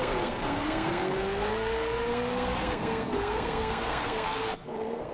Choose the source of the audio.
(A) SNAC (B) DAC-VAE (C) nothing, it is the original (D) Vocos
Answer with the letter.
A